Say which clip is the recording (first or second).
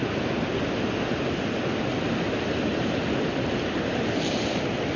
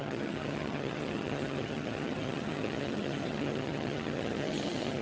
first